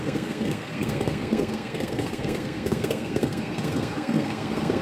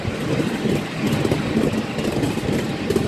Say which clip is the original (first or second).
second